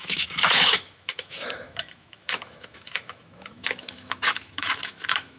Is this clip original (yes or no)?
no